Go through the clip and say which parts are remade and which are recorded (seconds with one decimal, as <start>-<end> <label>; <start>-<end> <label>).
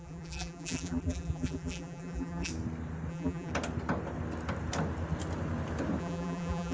0.0-2.5 remade; 2.5-3.1 recorded; 3.1-3.5 remade; 3.5-6.0 recorded; 6.0-6.7 remade